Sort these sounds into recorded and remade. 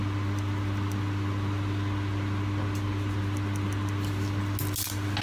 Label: recorded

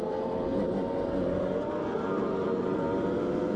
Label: recorded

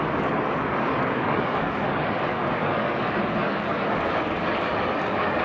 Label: remade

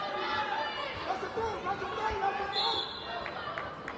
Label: recorded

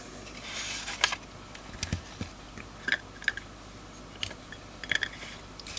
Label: recorded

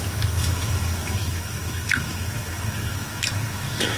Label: remade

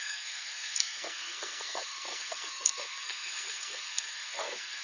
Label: remade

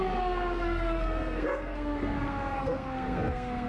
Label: remade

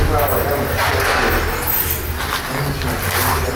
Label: recorded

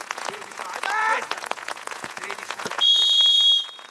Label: remade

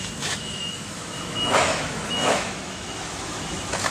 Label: remade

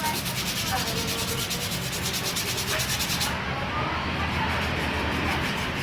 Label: recorded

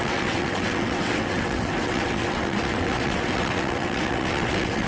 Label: remade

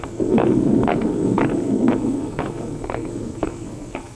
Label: remade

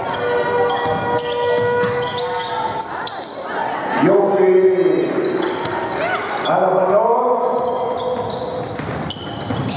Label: recorded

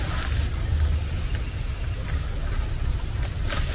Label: recorded